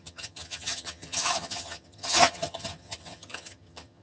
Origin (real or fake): fake